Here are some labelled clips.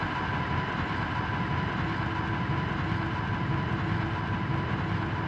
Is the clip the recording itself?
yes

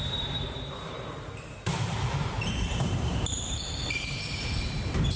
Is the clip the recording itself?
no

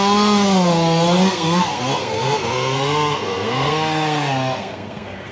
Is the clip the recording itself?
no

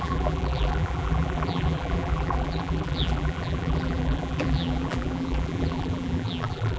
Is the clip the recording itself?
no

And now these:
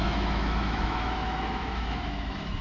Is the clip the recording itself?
no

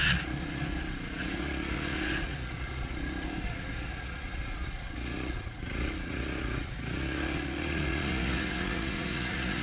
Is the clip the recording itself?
no